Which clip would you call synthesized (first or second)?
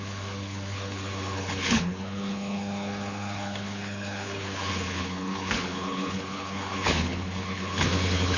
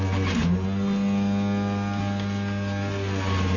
first